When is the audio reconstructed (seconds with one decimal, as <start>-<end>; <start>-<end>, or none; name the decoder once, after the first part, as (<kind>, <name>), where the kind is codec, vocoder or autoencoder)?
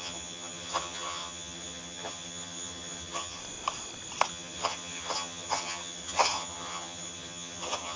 0.0-3.4 (vocoder, HiFi-GAN); 4.3-8.0